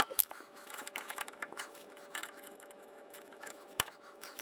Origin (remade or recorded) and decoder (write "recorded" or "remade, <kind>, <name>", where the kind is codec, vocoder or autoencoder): remade, autoencoder, DAC-VAE